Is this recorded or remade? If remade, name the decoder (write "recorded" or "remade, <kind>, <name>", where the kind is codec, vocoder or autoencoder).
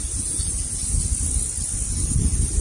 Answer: recorded